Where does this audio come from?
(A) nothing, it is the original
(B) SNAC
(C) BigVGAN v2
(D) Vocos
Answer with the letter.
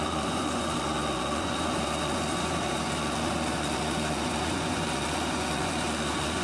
D